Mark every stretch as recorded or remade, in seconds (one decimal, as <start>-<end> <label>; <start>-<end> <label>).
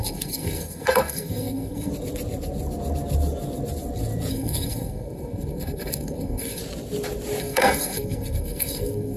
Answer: 0.0-1.9 remade; 1.9-4.3 recorded; 4.3-6.6 remade; 6.6-7.4 recorded; 7.4-9.2 remade